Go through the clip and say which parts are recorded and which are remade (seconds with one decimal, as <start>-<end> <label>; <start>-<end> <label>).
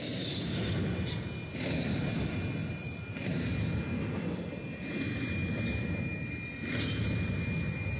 0.0-2.6 recorded; 2.6-3.5 remade; 3.5-8.0 recorded